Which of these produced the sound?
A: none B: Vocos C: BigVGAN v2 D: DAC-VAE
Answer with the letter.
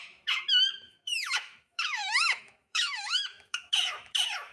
D